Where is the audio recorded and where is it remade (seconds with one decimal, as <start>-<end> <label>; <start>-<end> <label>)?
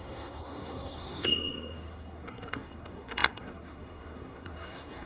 0.0-5.1 remade